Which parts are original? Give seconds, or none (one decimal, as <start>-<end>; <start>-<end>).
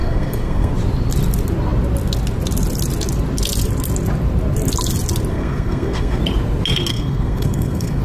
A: 0.7-5.3; 6.2-6.9